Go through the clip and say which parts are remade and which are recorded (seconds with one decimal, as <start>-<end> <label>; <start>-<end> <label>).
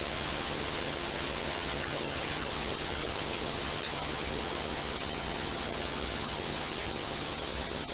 0.0-7.9 remade